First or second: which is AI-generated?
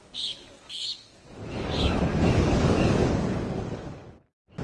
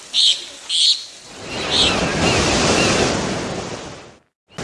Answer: first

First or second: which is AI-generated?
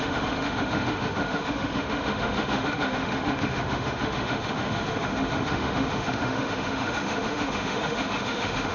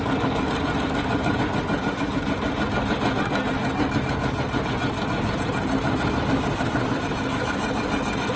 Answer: first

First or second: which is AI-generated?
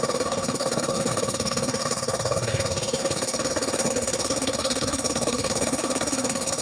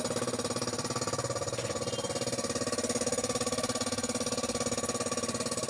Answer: first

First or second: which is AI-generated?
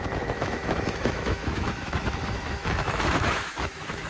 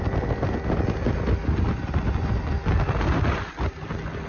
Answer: first